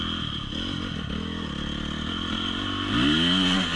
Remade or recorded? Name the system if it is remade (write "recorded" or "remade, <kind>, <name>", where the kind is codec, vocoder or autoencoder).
recorded